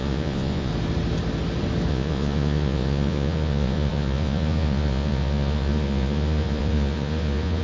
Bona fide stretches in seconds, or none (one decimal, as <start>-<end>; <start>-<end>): 0.7-1.9